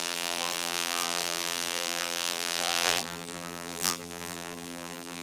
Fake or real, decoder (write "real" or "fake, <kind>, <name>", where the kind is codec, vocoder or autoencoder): fake, vocoder, BigVGAN v2